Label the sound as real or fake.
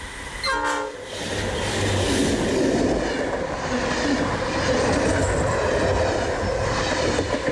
real